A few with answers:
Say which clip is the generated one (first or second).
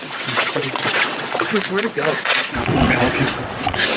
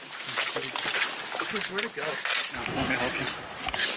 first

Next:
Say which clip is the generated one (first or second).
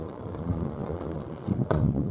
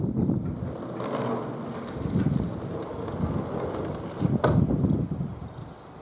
first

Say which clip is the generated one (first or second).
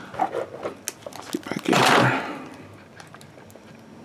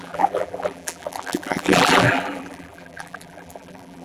second